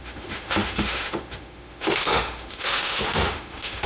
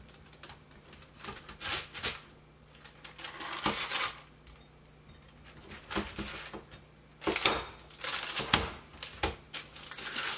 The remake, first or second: first